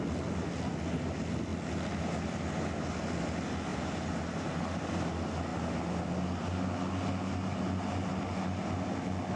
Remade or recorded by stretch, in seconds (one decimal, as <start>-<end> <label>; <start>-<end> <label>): 0.0-3.7 recorded; 3.7-5.1 remade; 5.1-9.4 recorded